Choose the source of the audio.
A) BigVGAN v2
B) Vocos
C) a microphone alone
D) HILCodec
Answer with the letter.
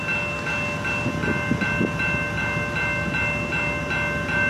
C